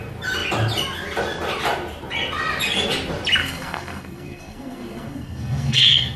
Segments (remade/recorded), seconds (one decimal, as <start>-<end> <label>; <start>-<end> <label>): 0.0-3.4 recorded; 3.4-6.2 remade